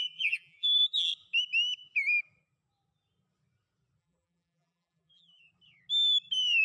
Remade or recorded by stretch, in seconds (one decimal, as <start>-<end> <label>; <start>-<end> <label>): 0.0-1.1 remade; 1.1-4.0 recorded; 4.0-5.5 remade; 5.5-6.6 recorded

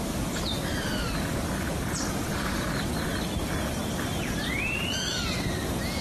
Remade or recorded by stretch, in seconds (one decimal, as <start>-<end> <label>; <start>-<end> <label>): 0.0-2.3 recorded; 2.3-3.1 remade; 3.1-3.8 recorded; 3.8-5.1 remade; 5.1-6.0 recorded

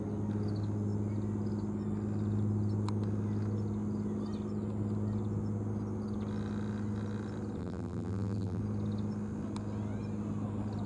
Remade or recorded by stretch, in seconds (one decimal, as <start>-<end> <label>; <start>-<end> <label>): 0.0-7.6 recorded; 7.6-8.6 remade; 8.6-10.9 recorded

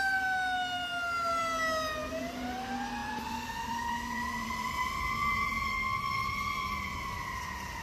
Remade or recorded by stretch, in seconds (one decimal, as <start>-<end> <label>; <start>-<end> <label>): 0.0-3.0 recorded; 3.0-7.8 remade

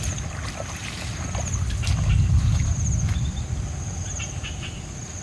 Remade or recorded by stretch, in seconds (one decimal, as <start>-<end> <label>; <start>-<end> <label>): 0.0-0.8 remade; 0.8-3.9 recorded; 3.9-5.2 remade

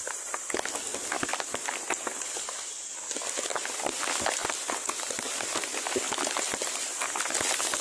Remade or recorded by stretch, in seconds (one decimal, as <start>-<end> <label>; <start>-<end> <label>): 0.0-5.7 recorded; 5.7-7.2 remade; 7.2-7.8 recorded

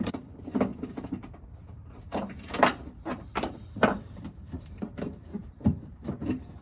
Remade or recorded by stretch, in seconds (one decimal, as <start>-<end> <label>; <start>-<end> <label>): 0.0-6.6 remade

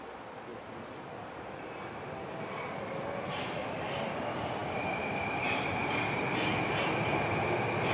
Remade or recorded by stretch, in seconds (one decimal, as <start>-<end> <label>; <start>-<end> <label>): 0.0-7.9 recorded